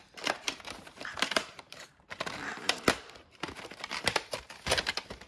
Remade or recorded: remade